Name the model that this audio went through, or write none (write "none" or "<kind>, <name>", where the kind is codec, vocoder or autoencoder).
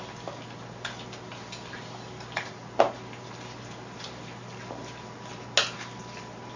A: none